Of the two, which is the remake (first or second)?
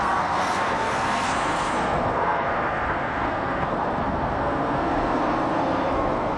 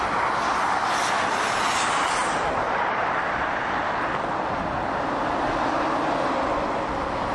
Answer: first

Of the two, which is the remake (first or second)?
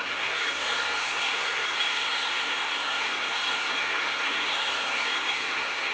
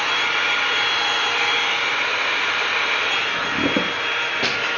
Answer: first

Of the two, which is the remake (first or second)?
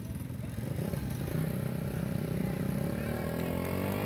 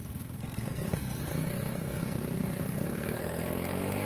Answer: second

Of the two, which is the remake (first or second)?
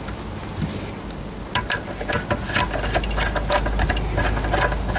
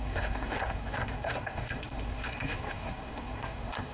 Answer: second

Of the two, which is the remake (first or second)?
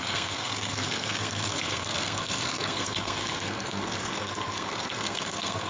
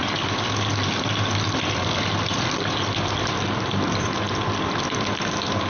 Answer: first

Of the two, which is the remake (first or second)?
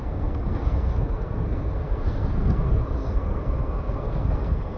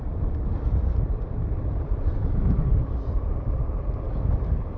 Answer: first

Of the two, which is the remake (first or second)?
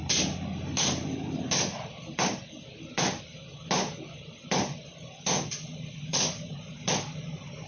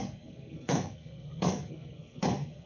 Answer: second